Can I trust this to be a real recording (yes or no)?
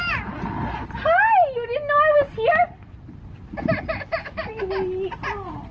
yes